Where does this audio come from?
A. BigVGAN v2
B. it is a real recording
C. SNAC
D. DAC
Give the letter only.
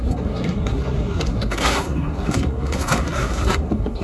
C